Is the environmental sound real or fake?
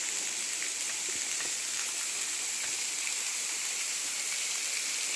real